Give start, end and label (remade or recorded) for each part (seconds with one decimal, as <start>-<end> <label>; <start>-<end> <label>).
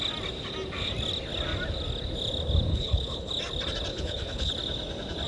0.0-2.7 recorded; 2.7-3.3 remade; 3.3-3.9 recorded; 3.9-4.5 remade; 4.5-5.3 recorded